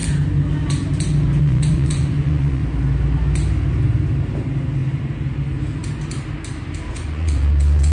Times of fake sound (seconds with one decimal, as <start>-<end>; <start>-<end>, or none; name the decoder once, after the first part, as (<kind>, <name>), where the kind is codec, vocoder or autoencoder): 1.4-2.6 (vocoder, Vocos); 6.9-7.9